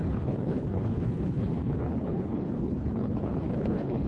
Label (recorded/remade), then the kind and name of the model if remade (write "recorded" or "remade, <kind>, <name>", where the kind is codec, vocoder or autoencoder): remade, codec, HILCodec